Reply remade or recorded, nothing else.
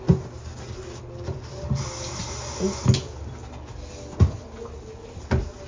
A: recorded